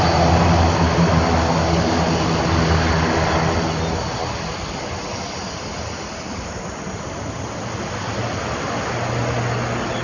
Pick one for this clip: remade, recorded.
recorded